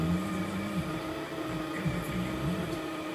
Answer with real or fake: real